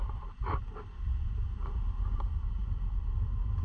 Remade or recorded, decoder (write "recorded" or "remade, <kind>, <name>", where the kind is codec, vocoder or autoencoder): remade, vocoder, BigVGAN v2